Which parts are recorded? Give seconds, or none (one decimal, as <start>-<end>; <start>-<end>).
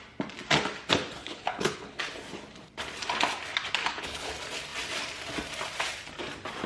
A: 0.0-1.2; 2.0-3.8; 4.3-6.7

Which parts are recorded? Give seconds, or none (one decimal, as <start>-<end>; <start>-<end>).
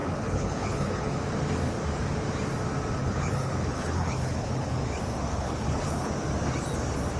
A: 1.2-3.0; 4.8-5.3; 6.1-7.2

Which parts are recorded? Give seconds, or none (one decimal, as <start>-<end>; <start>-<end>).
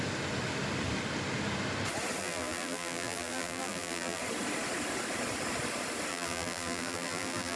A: 0.0-2.2; 4.2-6.1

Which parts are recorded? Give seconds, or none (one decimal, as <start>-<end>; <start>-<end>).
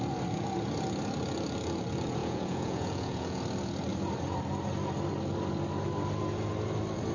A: 0.0-2.2; 3.4-7.1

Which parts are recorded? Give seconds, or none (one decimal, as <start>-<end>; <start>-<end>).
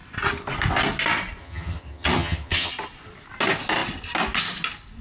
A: 0.0-1.4; 2.7-5.0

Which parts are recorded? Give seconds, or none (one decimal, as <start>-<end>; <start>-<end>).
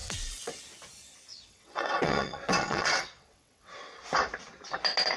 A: 0.6-1.3; 4.0-5.2